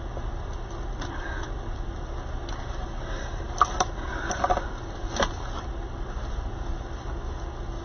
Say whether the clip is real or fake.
real